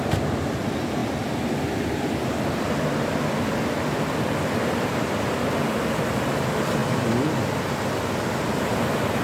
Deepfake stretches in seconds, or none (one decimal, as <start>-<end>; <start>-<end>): none